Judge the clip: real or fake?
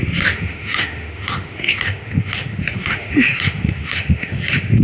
fake